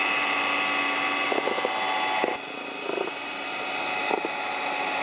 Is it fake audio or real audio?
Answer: real